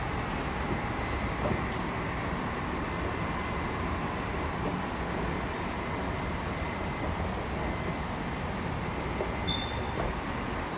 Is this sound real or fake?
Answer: real